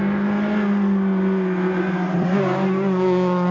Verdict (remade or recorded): recorded